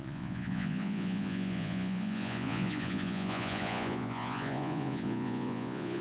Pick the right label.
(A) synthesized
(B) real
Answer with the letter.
A